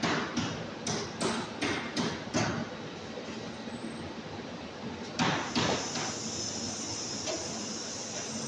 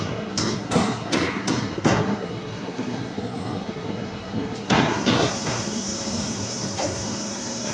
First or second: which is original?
first